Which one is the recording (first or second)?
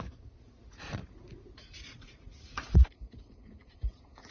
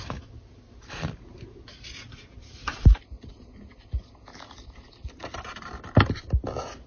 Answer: second